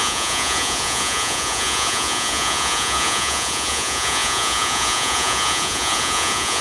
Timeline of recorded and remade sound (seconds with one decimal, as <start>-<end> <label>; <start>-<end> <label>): 0.0-6.6 remade